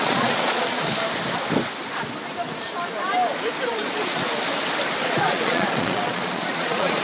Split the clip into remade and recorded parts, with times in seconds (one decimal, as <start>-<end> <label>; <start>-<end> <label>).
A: 0.0-0.9 remade; 0.9-3.7 recorded; 3.7-4.2 remade; 4.2-5.0 recorded; 5.0-7.0 remade